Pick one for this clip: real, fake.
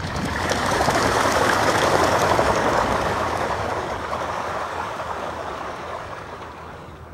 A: fake